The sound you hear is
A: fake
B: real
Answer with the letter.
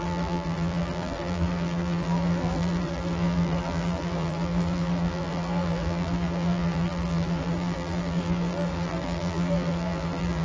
A